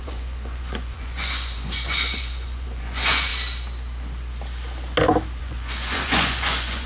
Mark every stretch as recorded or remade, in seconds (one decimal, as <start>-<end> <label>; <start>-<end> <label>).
0.0-3.3 remade; 3.3-5.4 recorded; 5.4-6.9 remade